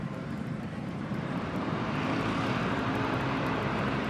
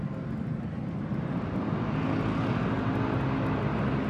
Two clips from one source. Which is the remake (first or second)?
first